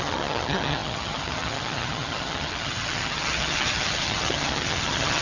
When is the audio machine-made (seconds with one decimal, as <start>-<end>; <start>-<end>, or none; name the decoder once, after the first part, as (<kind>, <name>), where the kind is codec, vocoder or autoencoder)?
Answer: 0.0-5.2 (vocoder, HiFi-GAN)